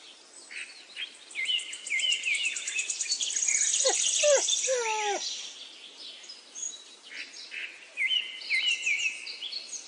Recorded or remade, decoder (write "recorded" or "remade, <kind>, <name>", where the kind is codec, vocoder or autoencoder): recorded